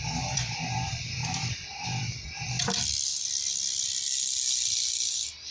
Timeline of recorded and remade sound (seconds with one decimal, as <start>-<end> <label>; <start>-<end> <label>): 0.0-5.5 remade